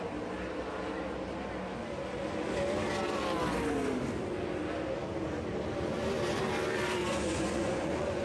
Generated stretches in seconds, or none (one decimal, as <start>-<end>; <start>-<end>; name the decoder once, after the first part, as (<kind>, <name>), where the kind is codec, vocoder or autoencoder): 7.0-8.2 (vocoder, Vocos)